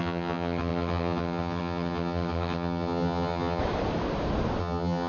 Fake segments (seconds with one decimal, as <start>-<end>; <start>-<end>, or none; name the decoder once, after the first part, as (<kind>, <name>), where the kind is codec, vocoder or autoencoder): 0.0-3.6 (vocoder, HiFi-GAN); 4.6-5.1